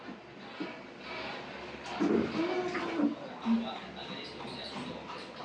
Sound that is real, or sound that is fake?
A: real